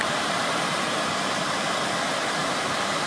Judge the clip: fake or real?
fake